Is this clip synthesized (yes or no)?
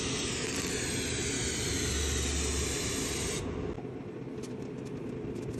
no